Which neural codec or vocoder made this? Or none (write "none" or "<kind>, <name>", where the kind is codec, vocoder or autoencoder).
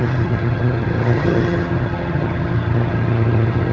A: vocoder, HiFi-GAN